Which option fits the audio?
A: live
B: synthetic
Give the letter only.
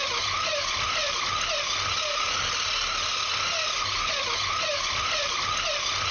A